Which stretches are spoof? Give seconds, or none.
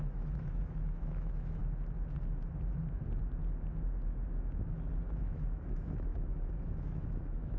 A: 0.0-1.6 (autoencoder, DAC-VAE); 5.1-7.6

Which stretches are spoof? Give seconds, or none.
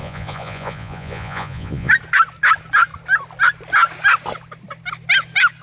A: 0.0-1.9 (vocoder, Vocos)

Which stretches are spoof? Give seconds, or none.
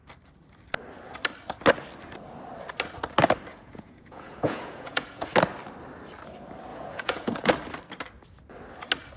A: 3.5-5.3 (vocoder, Vocos); 6.7-7.5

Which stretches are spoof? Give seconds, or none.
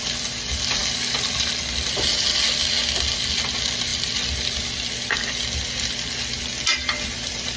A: none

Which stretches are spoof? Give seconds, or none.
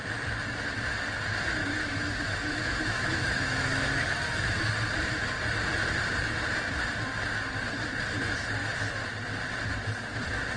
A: 1.6-4.6 (autoencoder, DAC-VAE)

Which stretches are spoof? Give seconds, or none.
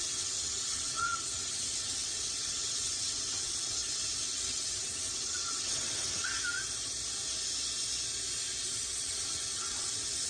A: 0.0-6.4 (vocoder, WaveNeXt); 8.6-10.3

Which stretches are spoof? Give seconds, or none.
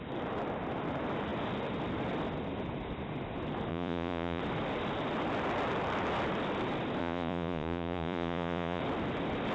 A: 3.7-4.4 (vocoder, Vocos); 7.0-8.8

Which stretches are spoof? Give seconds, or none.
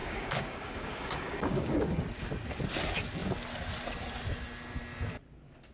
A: 0.0-2.0 (codec, DAC)